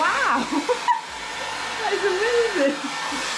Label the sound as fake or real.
real